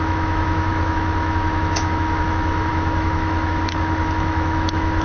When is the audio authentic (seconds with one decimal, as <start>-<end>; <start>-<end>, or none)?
none